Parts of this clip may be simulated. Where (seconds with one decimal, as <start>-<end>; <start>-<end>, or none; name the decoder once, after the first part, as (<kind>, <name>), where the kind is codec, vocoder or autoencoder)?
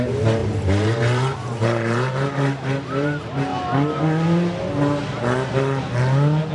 0.0-3.5 (vocoder, BigVGAN v2)